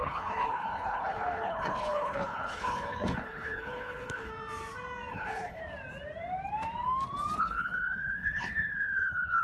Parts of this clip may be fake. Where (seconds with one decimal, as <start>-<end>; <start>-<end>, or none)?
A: 0.0-4.3; 5.1-5.6; 7.4-9.4